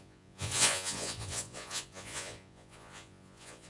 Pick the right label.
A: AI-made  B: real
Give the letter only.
A